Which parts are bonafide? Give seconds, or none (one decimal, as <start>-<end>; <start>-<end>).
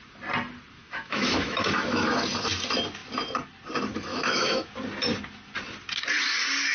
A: 0.0-0.8; 2.1-4.1; 4.7-6.7